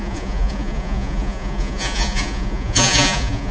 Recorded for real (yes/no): no